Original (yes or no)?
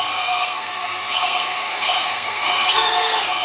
no